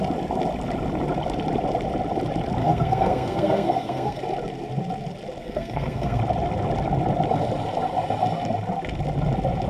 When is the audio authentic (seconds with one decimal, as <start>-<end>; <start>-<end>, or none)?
0.0-2.6; 4.2-5.4; 6.2-9.7